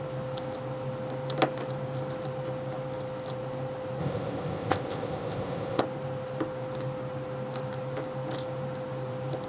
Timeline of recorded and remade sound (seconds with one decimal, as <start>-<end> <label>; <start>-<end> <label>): 0.0-4.0 recorded; 4.0-5.8 remade; 5.8-9.5 recorded